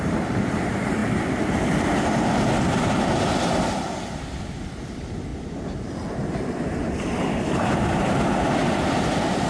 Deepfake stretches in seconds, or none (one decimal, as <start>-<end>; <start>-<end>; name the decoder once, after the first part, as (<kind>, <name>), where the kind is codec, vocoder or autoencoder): 0.0-1.0 (vocoder, BigVGAN v2); 3.7-9.5